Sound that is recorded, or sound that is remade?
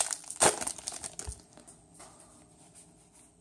recorded